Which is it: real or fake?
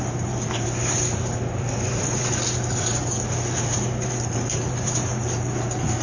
fake